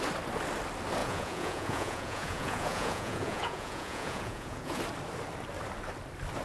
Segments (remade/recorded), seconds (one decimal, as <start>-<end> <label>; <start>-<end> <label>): 0.0-1.0 recorded; 1.0-4.8 remade; 4.8-6.4 recorded